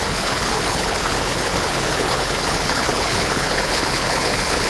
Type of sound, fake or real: fake